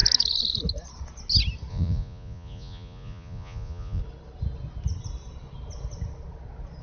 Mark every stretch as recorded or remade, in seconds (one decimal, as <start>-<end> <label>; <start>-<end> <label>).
0.0-1.7 recorded; 1.7-4.0 remade; 4.0-6.8 recorded